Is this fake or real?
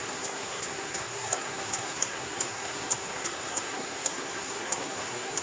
fake